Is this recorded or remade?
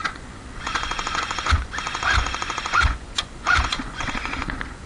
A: remade